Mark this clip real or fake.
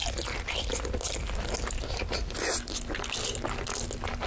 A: real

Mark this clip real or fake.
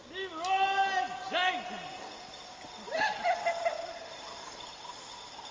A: real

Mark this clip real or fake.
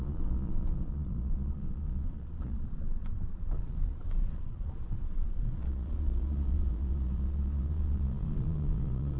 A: fake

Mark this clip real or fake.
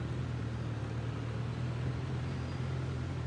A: real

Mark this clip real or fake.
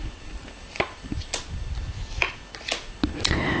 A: real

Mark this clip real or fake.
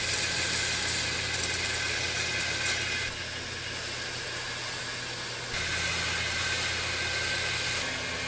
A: real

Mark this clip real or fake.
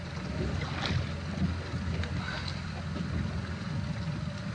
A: real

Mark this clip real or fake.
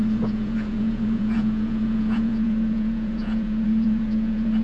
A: fake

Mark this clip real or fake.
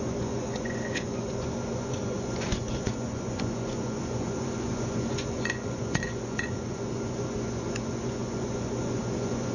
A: fake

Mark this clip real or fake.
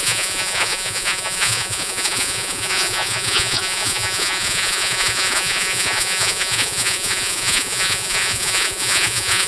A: fake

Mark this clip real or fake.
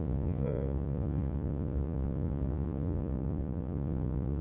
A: fake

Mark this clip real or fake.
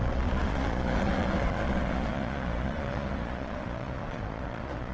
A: fake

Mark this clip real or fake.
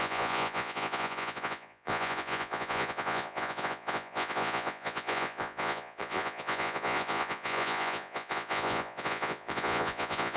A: fake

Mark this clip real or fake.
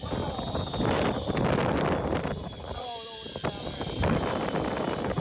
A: real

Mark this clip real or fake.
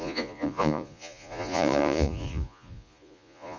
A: fake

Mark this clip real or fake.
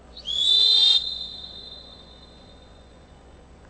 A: fake